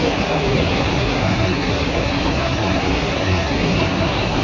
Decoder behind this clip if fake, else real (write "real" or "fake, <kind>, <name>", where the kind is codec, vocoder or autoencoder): fake, codec, SNAC